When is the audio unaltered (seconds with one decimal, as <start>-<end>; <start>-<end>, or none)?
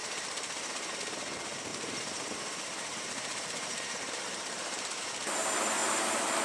0.9-1.7; 5.0-6.4